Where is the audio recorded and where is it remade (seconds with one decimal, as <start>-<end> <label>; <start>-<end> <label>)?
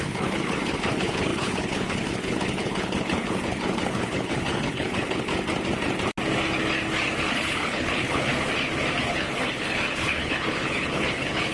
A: 0.0-5.3 remade; 5.3-7.3 recorded; 7.3-8.3 remade; 8.3-9.0 recorded; 9.0-11.5 remade